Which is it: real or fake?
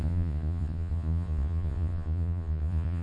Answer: fake